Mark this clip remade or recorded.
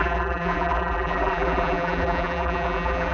remade